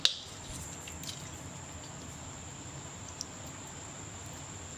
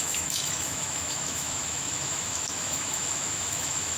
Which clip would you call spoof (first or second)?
second